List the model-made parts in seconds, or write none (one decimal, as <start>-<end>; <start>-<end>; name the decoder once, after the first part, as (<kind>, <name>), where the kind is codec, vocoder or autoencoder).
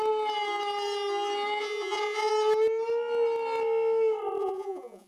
1.6-2.3 (vocoder, Vocos); 4.4-5.1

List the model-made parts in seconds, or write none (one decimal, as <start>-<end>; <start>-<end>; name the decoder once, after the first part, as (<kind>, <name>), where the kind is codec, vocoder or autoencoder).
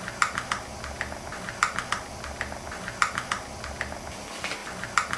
none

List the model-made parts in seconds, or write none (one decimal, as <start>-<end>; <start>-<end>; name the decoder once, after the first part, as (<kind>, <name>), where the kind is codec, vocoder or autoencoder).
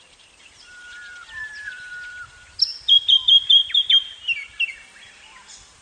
0.0-3.6 (vocoder, BigVGAN v2); 4.7-5.8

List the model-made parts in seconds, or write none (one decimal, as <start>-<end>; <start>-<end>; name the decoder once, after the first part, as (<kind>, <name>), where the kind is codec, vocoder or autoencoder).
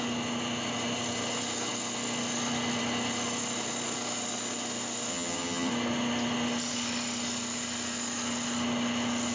5.1-5.7 (vocoder, HiFi-GAN)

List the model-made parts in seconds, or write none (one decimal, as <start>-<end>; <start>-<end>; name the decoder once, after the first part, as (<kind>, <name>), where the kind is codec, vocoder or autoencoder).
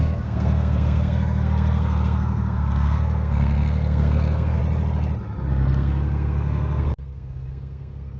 0.0-4.6 (codec, SNAC); 5.5-8.2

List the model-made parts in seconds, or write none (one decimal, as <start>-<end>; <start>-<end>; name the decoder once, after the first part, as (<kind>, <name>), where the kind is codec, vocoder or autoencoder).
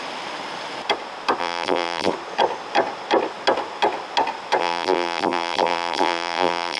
1.4-2.1 (vocoder, BigVGAN v2); 4.6-6.8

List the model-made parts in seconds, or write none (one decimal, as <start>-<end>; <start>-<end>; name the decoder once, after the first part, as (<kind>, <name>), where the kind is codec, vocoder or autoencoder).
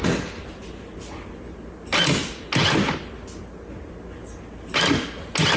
none